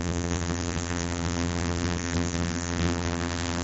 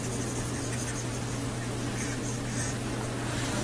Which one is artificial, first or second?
first